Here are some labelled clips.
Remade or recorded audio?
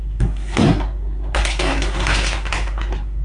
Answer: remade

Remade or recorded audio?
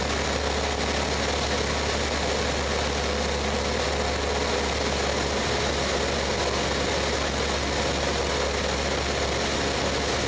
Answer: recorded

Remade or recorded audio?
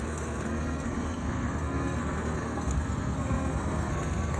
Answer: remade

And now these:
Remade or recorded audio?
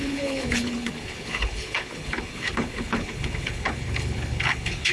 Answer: remade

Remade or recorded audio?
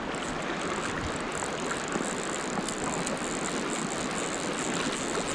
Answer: recorded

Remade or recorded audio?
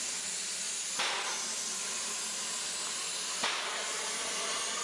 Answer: recorded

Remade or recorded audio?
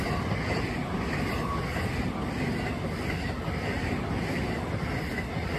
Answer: recorded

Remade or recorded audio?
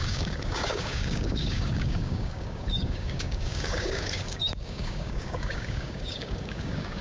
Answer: remade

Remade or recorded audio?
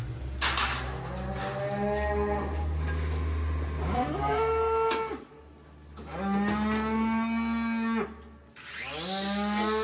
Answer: recorded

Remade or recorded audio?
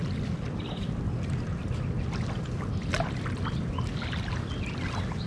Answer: recorded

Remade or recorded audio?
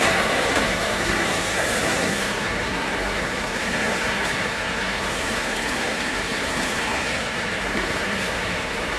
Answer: remade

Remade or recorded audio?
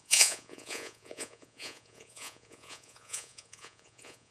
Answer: remade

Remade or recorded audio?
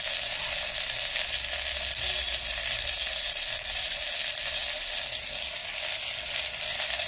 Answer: recorded